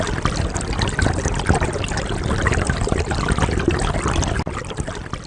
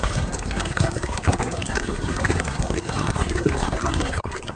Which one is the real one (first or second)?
first